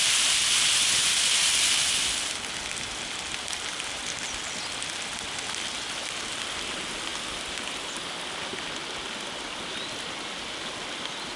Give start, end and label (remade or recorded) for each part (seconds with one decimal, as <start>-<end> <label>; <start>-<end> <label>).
0.0-11.4 recorded